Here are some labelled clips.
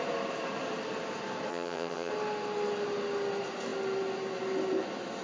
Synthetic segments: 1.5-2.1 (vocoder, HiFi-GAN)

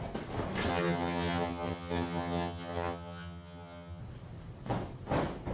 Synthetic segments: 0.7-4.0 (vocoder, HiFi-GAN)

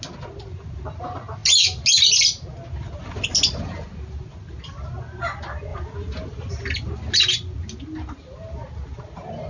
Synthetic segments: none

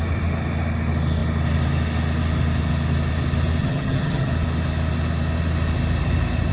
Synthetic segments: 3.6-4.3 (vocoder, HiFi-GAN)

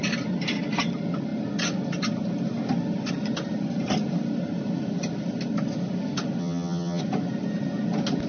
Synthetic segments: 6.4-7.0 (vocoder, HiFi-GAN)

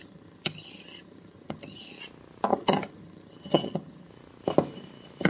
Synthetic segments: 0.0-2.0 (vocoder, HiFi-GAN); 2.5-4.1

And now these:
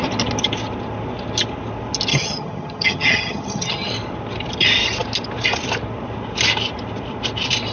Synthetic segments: 2.1-3.9 (vocoder, HiFi-GAN)

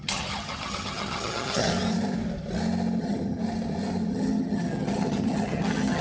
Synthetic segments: 0.0-1.7 (vocoder, HiFi-GAN); 3.0-3.4; 4.1-6.0